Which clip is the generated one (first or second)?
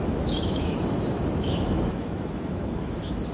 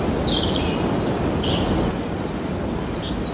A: first